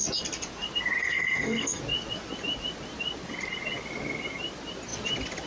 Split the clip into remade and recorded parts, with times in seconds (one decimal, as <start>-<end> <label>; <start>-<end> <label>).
0.0-1.0 recorded; 1.0-1.8 remade; 1.8-5.5 recorded